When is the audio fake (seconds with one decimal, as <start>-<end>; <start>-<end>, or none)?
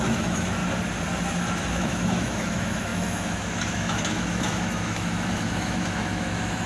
0.0-0.6; 1.7-6.7